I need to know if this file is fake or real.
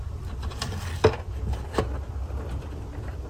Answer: real